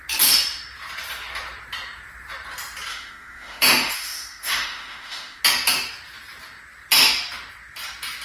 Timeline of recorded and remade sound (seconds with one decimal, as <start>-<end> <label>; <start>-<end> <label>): 0.0-2.9 recorded; 2.9-5.4 remade; 5.4-8.2 recorded